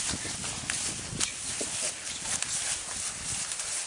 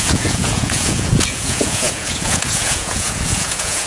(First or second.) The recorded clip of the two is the first